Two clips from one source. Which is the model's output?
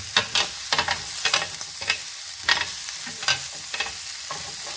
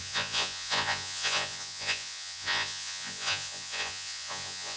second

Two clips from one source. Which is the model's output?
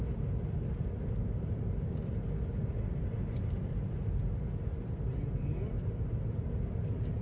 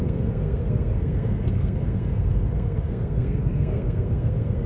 second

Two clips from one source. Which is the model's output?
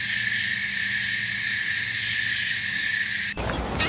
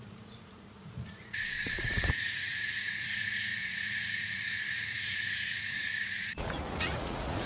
second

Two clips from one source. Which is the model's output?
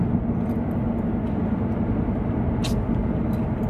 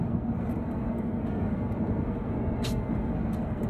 second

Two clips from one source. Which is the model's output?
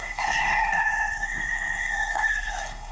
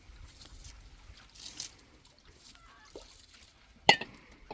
first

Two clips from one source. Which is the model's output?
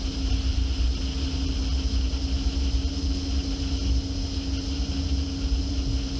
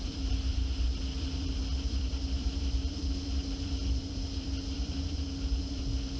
second